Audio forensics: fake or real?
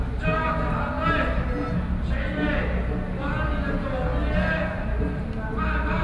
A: real